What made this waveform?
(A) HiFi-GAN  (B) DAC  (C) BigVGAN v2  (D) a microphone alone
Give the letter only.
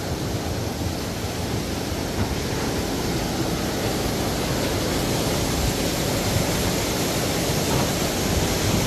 D